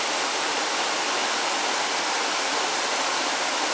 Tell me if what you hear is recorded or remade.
recorded